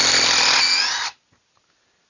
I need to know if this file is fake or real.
real